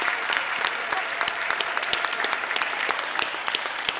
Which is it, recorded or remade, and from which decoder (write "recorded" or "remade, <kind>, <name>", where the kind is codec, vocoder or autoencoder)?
remade, vocoder, BigVGAN v2